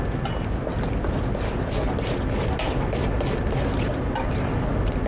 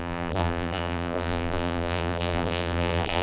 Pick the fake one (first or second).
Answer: second